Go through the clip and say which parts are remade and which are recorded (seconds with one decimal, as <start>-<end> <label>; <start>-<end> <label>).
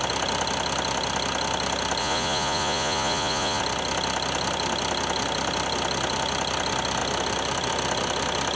0.0-2.0 recorded; 2.0-3.6 remade; 3.6-8.6 recorded